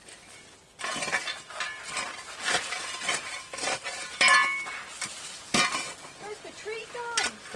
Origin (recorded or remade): recorded